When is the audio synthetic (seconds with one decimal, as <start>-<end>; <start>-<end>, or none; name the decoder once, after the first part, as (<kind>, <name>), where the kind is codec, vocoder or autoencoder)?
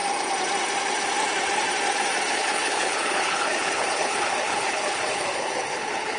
2.3-6.2 (codec, HILCodec)